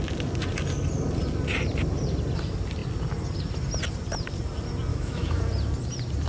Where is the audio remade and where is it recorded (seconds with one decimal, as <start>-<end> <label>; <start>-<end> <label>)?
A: 0.0-4.9 recorded; 4.9-5.4 remade; 5.4-6.3 recorded